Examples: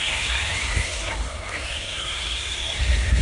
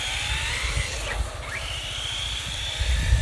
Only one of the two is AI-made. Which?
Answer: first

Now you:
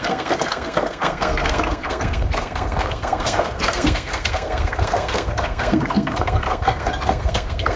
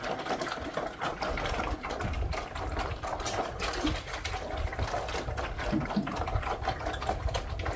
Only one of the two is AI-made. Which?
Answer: first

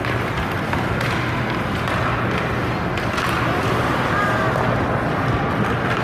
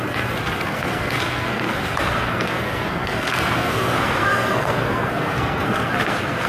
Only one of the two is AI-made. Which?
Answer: second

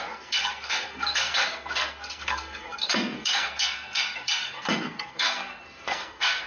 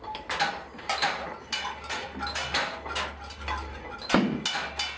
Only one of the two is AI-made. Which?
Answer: first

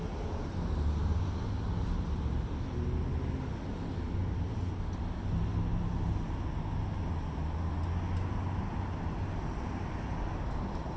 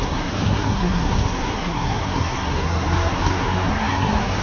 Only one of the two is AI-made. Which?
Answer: second